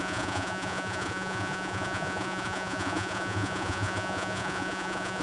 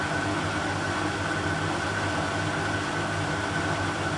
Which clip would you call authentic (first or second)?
second